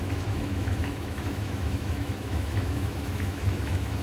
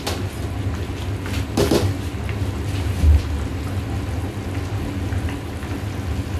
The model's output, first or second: first